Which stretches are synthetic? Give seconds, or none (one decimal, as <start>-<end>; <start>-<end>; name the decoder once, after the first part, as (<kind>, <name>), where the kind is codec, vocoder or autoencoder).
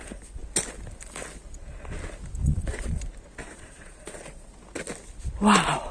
2.4-3.0 (vocoder, Vocos); 3.4-4.5